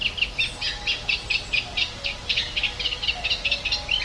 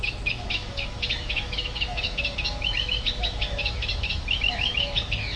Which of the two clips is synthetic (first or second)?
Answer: second